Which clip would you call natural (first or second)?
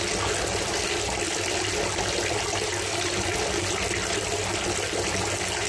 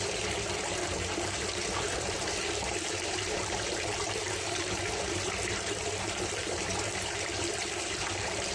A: first